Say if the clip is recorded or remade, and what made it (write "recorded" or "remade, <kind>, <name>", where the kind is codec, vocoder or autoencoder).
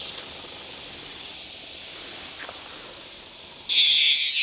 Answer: recorded